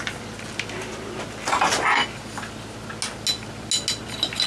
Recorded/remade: recorded